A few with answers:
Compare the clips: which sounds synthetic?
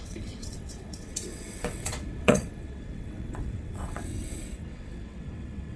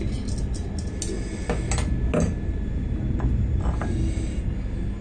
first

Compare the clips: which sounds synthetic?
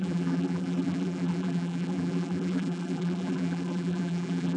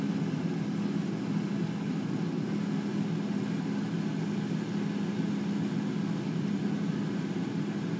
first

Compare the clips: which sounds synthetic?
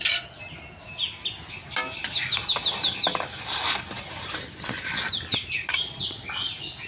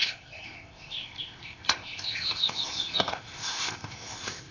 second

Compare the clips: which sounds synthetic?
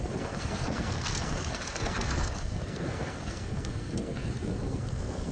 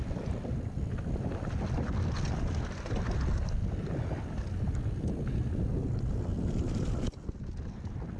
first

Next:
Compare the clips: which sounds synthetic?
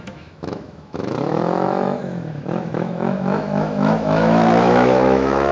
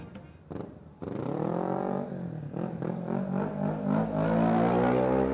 first